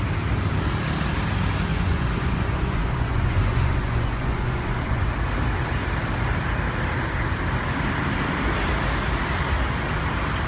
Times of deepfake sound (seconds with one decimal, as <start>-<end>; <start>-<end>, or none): 1.7-5.1

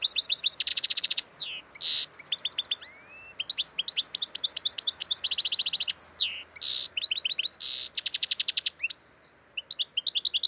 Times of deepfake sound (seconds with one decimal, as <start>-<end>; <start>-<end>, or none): 0.7-1.4

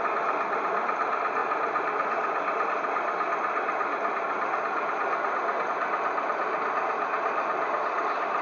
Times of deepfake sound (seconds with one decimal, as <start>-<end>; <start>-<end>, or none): none

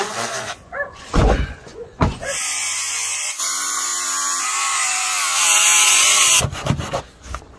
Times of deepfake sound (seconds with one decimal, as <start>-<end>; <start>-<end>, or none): 0.0-3.9; 4.4-5.1; 5.9-7.6

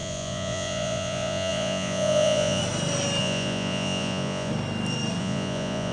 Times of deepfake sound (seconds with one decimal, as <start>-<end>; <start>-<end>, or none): 0.0-2.6; 3.2-4.5; 5.2-5.9

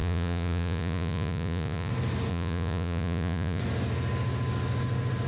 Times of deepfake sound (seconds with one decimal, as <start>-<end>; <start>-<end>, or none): 0.0-1.9; 2.3-3.6

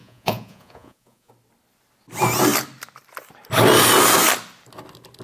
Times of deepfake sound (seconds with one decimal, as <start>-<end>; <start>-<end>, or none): 0.0-1.3

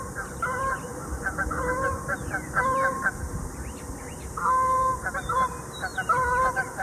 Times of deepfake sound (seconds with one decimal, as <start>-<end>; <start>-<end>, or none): none